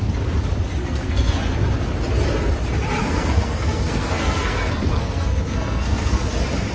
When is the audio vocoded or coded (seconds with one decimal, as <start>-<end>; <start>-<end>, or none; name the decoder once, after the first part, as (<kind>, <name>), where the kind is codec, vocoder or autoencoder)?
0.8-1.4 (codec, SNAC); 3.0-6.2